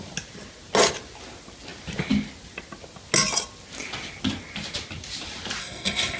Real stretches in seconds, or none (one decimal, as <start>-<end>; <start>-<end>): 0.0-5.6